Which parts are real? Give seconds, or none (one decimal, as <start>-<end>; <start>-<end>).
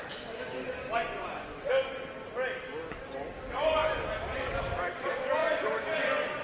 0.0-1.0; 1.7-6.4